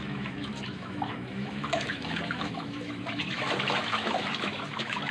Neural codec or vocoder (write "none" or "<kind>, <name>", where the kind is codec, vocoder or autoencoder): autoencoder, DAC-VAE